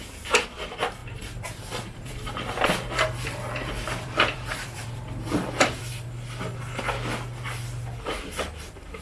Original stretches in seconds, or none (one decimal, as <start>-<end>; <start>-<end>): 0.0-1.0; 5.8-9.0